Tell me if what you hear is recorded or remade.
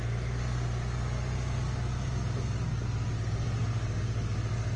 recorded